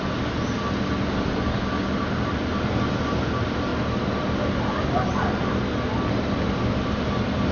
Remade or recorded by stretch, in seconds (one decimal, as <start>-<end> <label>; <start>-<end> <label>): 0.0-7.5 recorded